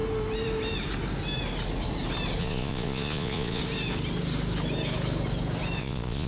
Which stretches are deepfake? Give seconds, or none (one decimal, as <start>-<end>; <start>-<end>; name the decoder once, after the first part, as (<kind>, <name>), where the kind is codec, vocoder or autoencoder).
2.4-3.6 (vocoder, Vocos); 5.8-6.3